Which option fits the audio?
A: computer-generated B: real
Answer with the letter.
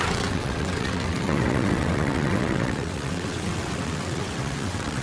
A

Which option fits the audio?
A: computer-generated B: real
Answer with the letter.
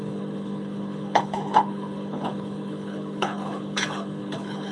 A